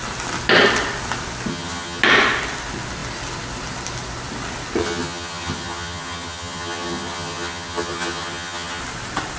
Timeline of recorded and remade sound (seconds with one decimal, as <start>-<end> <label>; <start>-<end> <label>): 0.0-1.5 recorded; 1.5-2.0 remade; 2.0-4.8 recorded; 4.8-8.8 remade; 8.8-9.4 recorded